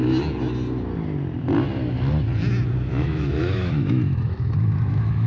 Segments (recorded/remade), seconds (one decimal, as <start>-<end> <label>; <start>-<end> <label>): 0.0-2.9 recorded; 2.9-5.3 remade